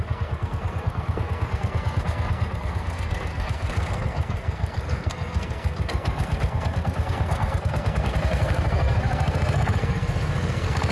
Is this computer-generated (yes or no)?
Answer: yes